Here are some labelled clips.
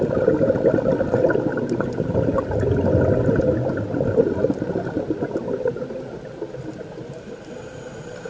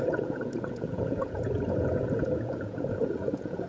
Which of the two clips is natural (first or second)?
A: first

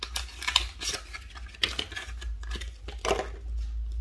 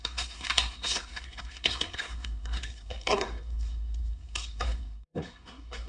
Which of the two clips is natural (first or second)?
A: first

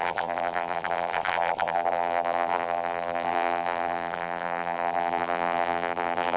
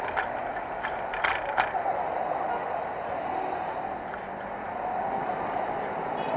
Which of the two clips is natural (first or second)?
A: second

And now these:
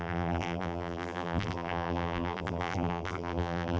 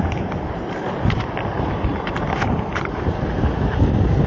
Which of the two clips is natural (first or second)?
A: second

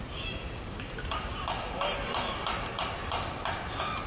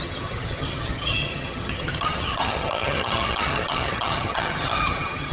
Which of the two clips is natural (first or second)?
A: first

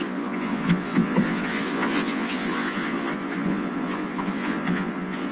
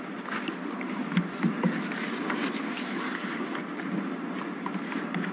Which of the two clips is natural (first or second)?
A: second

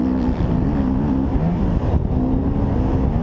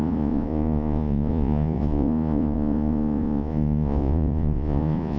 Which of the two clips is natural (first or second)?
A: first